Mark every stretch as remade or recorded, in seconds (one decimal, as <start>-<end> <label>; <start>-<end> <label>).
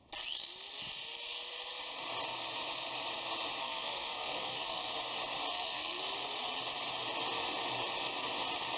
0.0-3.6 recorded; 3.6-4.9 remade; 4.9-5.5 recorded; 5.5-6.0 remade; 6.0-8.8 recorded